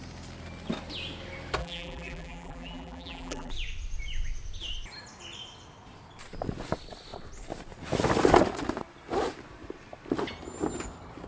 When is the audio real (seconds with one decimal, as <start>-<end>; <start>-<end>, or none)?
0.0-1.6; 3.5-11.3